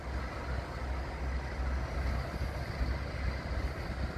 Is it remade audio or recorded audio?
recorded